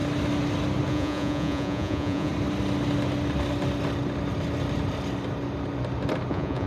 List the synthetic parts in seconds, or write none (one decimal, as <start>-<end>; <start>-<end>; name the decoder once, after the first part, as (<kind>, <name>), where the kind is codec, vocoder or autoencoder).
0.9-2.3 (vocoder, Vocos); 6.3-6.7